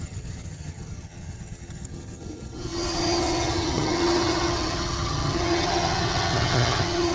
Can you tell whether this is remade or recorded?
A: remade